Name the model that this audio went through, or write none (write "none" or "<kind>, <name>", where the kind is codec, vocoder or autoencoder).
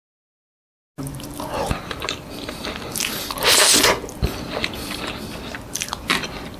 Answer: none